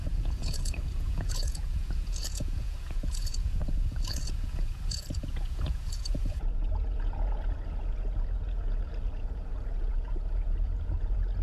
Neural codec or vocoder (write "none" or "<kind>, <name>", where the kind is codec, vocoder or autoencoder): vocoder, Vocos